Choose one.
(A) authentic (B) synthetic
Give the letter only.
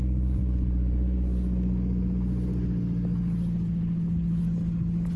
A